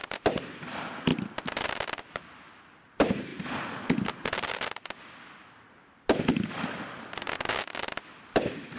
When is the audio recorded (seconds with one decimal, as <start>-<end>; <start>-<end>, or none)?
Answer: 0.0-8.8